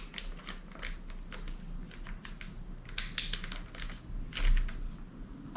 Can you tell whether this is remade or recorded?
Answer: recorded